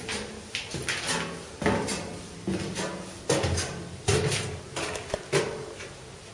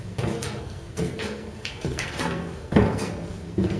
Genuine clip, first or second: first